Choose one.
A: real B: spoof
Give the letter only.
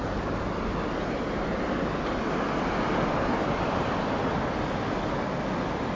A